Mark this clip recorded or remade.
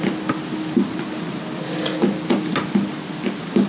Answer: recorded